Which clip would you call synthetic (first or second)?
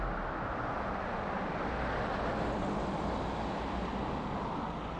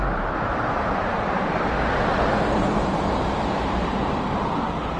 second